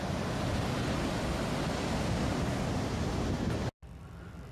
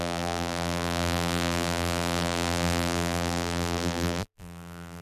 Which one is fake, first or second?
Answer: second